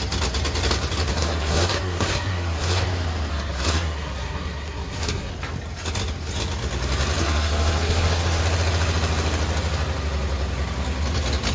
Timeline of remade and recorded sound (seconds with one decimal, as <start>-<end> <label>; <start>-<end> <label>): 0.0-1.1 recorded; 1.1-2.8 remade; 2.8-3.3 recorded; 3.3-5.3 remade; 5.3-7.2 recorded; 7.2-8.4 remade; 8.4-11.5 recorded